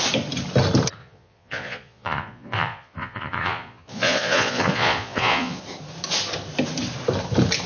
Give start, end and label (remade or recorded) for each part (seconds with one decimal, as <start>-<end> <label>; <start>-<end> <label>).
0.0-1.0 recorded; 1.0-5.6 remade; 5.6-7.7 recorded